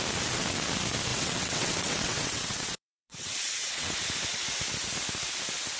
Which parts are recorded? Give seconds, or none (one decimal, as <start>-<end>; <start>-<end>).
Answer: 0.0-1.1; 3.9-5.8